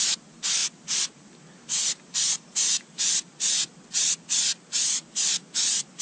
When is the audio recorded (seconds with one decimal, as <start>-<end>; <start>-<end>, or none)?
0.0-6.0